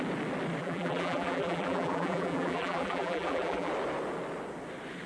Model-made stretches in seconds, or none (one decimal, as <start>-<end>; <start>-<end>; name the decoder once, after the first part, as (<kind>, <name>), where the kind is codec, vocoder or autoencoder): 0.6-3.7 (vocoder, BigVGAN v2)